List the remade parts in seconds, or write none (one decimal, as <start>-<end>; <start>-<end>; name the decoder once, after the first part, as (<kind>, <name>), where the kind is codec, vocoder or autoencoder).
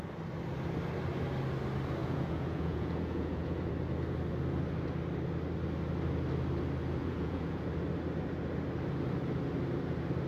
2.0-3.7 (vocoder, Vocos); 7.0-7.7